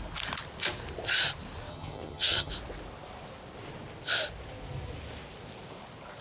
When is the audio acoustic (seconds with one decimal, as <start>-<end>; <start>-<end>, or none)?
0.0-1.7; 2.5-6.2